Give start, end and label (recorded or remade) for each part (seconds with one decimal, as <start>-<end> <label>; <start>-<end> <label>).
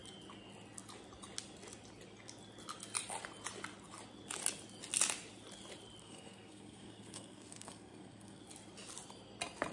0.0-6.0 recorded; 6.0-8.4 remade; 8.4-9.7 recorded